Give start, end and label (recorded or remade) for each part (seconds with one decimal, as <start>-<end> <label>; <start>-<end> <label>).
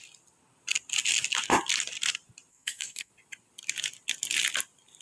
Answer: 0.0-2.5 recorded; 2.5-3.1 remade; 3.1-5.0 recorded